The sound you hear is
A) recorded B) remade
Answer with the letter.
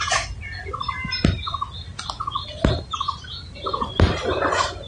A